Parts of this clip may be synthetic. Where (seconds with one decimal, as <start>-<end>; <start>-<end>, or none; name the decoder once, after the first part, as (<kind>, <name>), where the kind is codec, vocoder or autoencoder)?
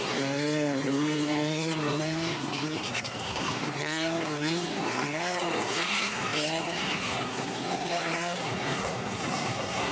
0.0-9.9 (codec, SNAC)